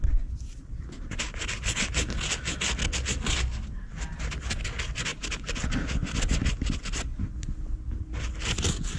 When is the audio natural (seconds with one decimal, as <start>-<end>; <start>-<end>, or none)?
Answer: 0.0-9.0

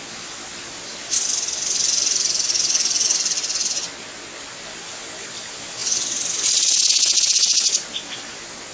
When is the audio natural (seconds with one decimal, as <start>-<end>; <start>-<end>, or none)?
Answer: 0.0-8.7

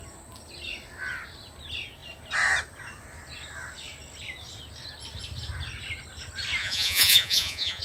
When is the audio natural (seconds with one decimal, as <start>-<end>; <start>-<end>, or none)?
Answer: 0.0-6.6